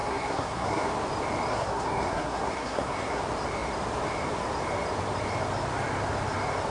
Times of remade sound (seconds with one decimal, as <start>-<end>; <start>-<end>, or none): 0.0-0.9; 1.5-3.2